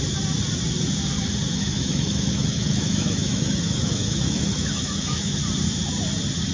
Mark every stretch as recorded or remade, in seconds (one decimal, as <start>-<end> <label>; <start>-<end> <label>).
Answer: 0.0-1.5 recorded; 1.5-5.4 remade; 5.4-6.5 recorded